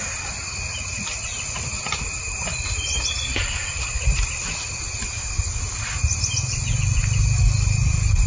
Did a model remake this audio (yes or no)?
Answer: no